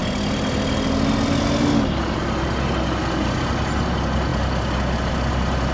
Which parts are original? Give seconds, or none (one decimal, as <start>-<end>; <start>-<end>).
0.0-5.7